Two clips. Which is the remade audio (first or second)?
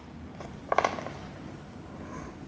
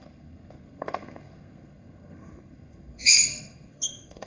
second